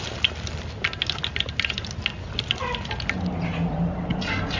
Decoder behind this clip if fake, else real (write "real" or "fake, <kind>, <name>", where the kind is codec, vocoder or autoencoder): real